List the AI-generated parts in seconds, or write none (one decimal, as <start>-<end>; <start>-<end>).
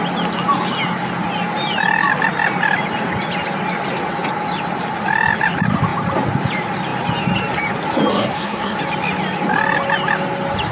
8.1-8.8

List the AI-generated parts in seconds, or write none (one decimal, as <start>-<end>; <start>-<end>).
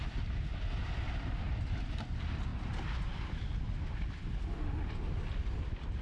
none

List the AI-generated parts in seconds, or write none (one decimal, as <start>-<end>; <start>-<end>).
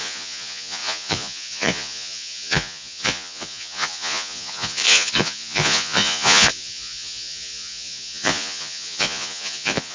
0.0-9.9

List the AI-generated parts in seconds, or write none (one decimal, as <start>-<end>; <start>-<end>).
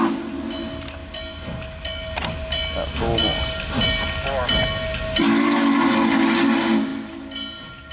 none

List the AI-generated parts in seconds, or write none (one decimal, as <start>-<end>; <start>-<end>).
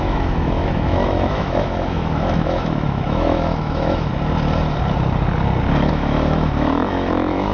0.0-4.1; 5.9-7.5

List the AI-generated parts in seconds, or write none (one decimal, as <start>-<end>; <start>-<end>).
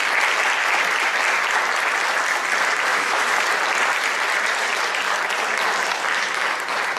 2.9-3.4